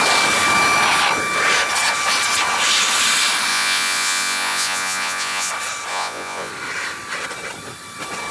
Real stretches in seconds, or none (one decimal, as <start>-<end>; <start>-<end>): 0.0-3.5; 5.5-5.9; 6.5-8.3